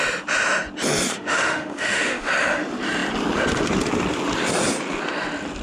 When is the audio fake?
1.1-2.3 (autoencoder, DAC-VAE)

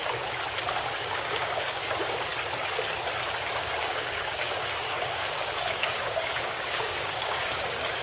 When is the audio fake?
1.0-2.3 (codec, DAC); 3.6-8.0

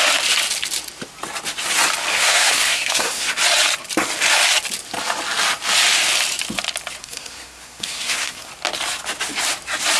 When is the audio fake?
2.1-3.3 (codec, SNAC); 7.0-8.5

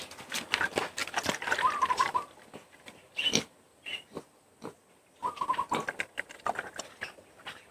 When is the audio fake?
none

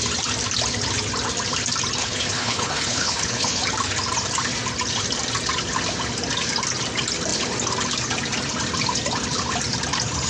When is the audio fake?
2.0-3.6 (codec, HILCodec)

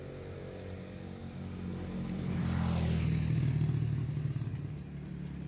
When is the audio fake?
1.7-2.4 (vocoder, BigVGAN v2); 4.5-5.5